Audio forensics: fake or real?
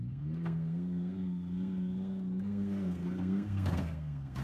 fake